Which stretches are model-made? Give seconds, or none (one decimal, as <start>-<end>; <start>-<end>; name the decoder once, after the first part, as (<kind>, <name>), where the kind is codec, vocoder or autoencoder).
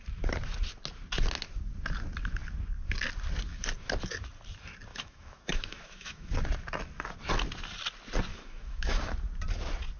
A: 4.9-6.3 (autoencoder, DAC-VAE); 8.3-9.0